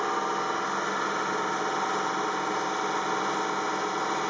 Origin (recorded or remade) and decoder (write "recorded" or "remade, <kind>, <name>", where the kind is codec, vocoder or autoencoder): recorded